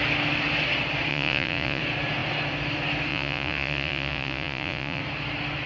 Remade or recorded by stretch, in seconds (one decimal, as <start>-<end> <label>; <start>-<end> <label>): 0.0-1.1 recorded; 1.1-1.8 remade; 1.8-3.1 recorded; 3.1-5.0 remade; 5.0-5.7 recorded